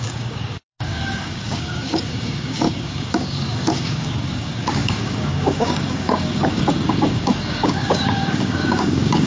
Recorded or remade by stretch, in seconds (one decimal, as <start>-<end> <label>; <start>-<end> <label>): 0.0-9.3 remade